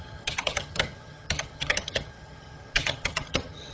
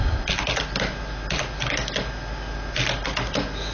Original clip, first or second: second